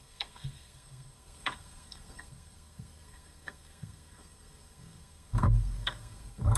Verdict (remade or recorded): remade